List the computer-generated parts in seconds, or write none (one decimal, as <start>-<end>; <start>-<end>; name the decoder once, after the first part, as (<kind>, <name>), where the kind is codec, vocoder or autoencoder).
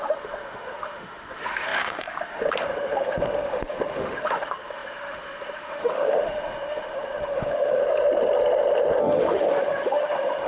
0.0-7.8 (autoencoder, DAC-VAE); 9.0-10.5